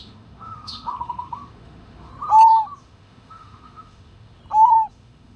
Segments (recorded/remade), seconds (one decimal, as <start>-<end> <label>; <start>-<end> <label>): 0.0-2.1 remade; 2.1-2.8 recorded; 2.8-4.4 remade; 4.4-4.9 recorded; 4.9-5.4 remade